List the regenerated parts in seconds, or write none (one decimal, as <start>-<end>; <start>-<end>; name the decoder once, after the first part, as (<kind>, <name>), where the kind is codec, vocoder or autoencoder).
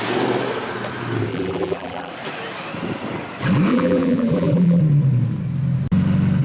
1.3-2.1 (vocoder, BigVGAN v2); 3.7-4.8